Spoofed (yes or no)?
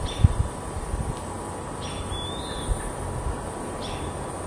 no